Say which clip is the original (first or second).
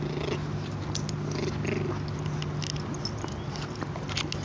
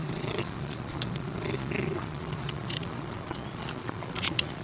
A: first